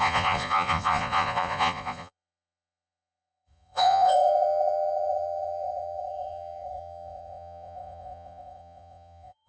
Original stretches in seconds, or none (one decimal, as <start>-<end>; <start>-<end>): none